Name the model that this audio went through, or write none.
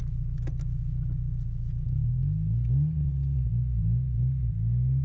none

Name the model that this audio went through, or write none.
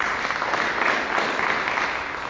none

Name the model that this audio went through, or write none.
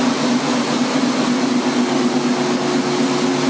none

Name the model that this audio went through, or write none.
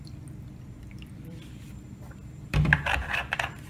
vocoder, BigVGAN v2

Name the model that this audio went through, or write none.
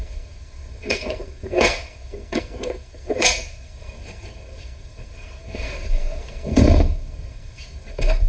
codec, SNAC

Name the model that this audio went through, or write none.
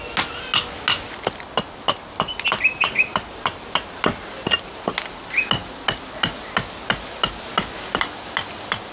none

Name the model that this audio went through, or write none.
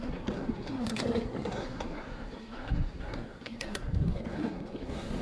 codec, SNAC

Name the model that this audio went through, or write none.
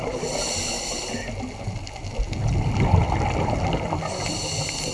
none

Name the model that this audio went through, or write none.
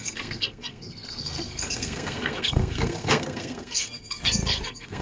codec, SNAC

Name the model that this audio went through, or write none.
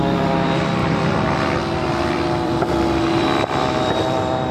vocoder, BigVGAN v2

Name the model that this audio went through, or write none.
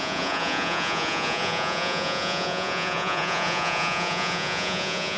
vocoder, Vocos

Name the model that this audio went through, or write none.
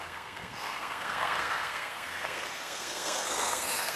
codec, SNAC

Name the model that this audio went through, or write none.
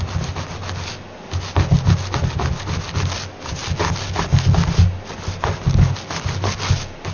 none